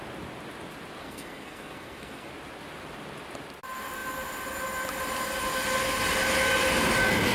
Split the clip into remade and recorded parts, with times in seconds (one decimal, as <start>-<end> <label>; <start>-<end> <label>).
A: 0.0-1.0 recorded; 1.0-2.3 remade; 2.3-7.3 recorded